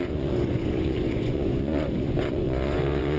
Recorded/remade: remade